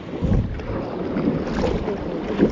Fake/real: real